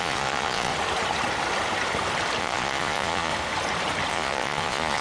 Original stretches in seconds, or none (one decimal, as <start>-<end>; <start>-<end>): 0.7-2.4; 3.3-4.1